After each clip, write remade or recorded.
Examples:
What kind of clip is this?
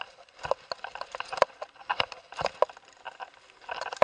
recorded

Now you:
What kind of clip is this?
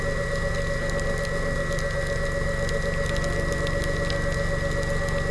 recorded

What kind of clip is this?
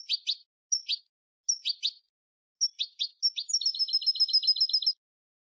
recorded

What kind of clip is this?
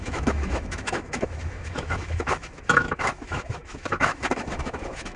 remade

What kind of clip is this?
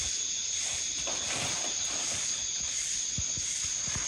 recorded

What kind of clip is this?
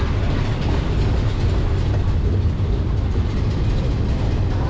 recorded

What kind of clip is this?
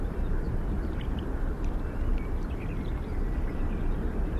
remade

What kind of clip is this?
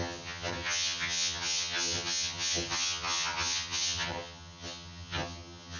remade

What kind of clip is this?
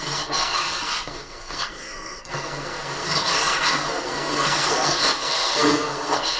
remade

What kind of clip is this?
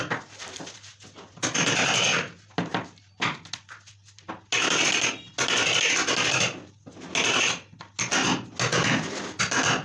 recorded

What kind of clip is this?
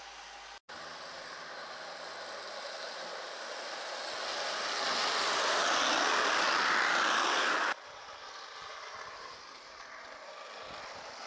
recorded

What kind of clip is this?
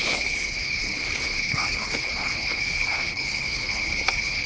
remade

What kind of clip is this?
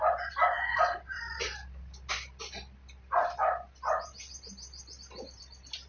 recorded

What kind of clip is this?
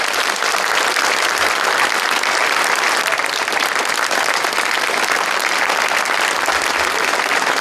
recorded